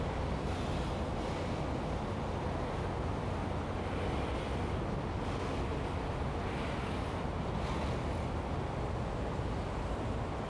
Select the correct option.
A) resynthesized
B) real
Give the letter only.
B